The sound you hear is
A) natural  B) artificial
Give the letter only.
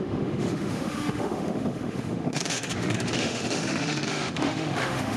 B